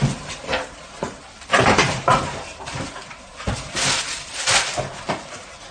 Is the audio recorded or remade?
remade